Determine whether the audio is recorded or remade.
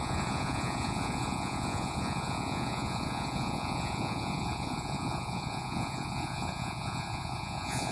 remade